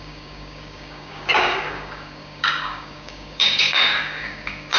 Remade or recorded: remade